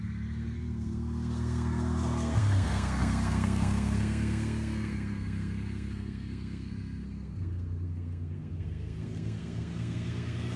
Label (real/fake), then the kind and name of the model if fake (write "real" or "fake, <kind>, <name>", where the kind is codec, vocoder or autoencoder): fake, codec, SNAC